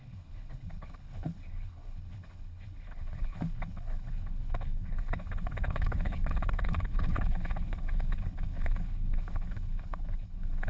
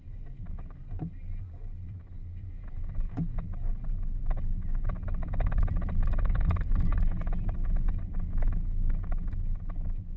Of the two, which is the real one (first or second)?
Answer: second